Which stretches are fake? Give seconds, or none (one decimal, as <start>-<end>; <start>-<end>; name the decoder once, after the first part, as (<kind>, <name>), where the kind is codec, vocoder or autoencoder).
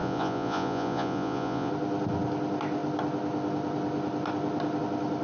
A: 0.0-1.7 (vocoder, Vocos)